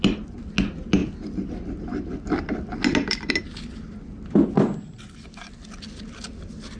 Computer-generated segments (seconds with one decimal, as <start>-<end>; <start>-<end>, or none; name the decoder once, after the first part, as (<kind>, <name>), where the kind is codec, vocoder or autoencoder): none